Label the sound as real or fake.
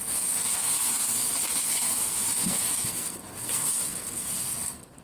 fake